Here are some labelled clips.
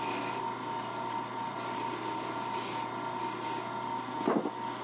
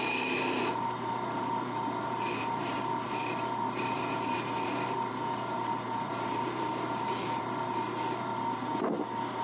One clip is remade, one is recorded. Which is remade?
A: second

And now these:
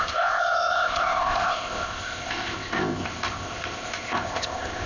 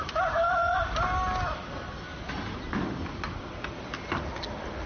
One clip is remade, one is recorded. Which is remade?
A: first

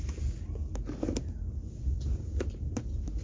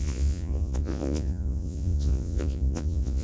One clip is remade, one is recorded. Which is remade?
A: second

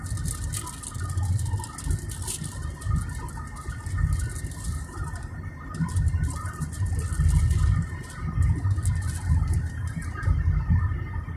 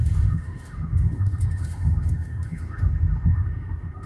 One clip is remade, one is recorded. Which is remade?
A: second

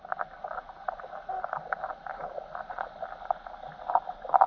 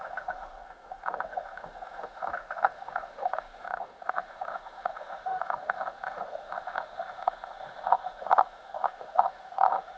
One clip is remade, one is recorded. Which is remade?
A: second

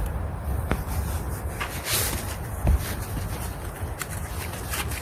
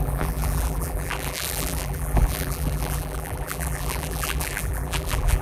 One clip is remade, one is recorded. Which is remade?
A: second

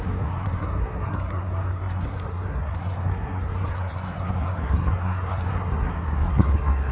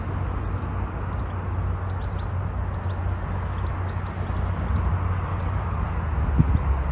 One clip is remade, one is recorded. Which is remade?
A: first